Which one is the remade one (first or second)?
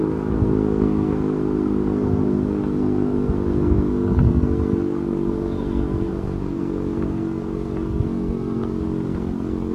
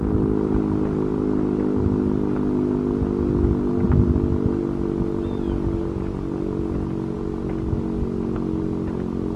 first